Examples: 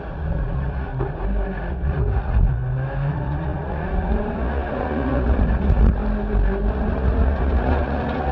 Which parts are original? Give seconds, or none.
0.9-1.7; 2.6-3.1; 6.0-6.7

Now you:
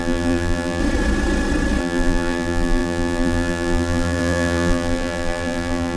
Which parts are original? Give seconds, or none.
0.8-1.8